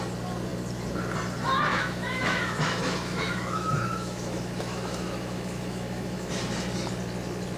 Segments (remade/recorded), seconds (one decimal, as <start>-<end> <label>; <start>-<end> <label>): 0.0-1.7 recorded; 1.7-6.3 remade; 6.3-7.6 recorded